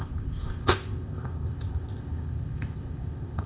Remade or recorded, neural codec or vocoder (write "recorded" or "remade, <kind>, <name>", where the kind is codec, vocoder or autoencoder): remade, codec, ZipCodec